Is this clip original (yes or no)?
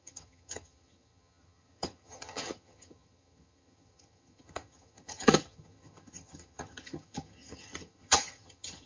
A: no